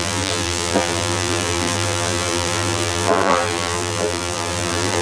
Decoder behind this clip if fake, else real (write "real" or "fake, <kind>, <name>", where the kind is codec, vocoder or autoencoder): fake, vocoder, BigVGAN v2